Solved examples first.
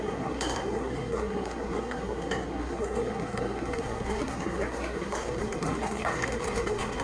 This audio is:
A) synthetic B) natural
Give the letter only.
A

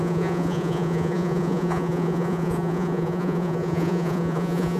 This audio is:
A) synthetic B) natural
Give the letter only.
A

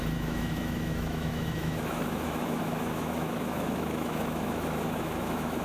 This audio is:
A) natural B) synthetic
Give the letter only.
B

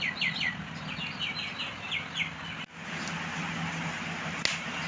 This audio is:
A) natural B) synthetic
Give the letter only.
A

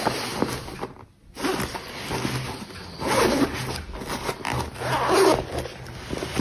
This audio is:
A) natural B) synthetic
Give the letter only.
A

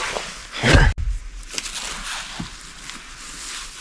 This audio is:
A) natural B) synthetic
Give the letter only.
A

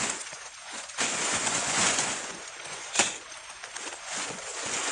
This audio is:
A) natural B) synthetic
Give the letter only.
B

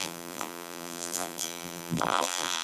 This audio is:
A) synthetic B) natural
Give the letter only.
A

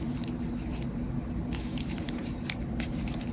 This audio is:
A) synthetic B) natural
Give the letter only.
A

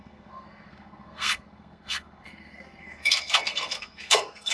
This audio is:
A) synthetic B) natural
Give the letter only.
A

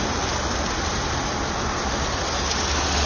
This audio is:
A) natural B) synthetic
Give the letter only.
A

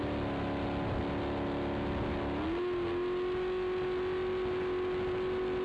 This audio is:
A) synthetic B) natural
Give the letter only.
B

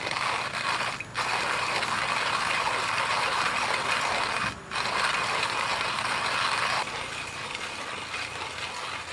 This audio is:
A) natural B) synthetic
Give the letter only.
A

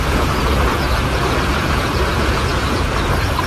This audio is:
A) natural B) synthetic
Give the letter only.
B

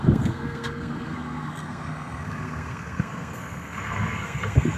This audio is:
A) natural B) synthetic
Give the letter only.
B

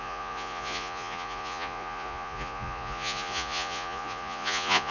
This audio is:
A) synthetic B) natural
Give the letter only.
A